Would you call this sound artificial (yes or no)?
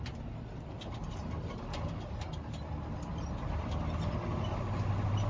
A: no